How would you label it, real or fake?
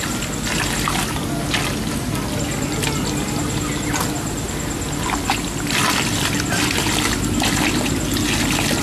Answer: real